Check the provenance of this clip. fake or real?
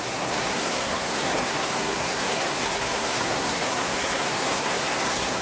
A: fake